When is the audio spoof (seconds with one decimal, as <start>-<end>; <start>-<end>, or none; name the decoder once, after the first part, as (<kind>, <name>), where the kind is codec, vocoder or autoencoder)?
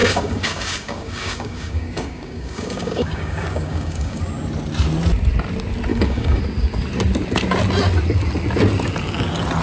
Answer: 0.0-4.2 (codec, DAC); 5.9-6.4